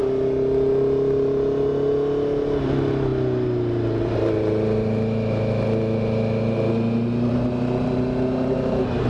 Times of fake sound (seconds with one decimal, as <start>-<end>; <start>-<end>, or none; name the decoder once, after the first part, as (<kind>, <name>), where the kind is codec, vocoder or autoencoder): none